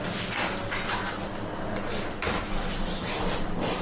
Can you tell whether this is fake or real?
real